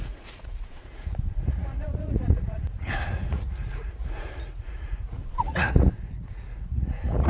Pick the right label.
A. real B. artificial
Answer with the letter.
B